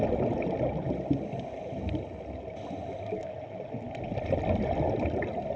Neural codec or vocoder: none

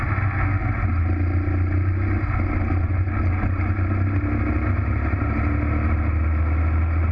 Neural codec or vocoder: none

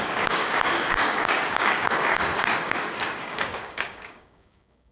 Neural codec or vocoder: codec, DAC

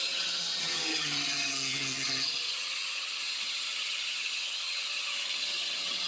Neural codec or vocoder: vocoder, HiFi-GAN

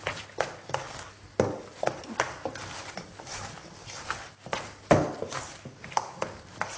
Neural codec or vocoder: none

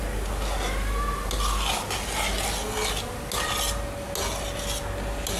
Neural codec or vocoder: none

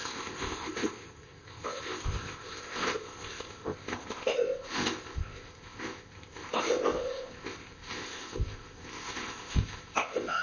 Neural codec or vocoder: codec, ZipCodec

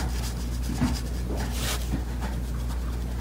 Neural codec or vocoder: none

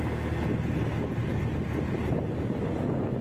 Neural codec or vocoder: none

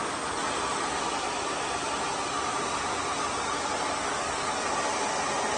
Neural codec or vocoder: none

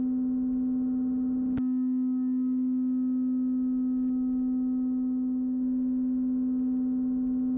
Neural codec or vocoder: none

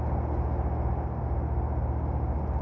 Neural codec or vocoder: none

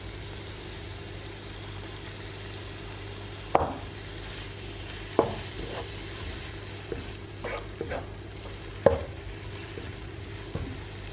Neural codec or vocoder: none